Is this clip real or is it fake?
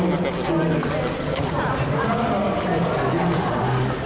real